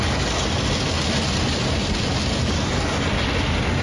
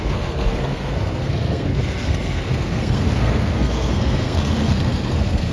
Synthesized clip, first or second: second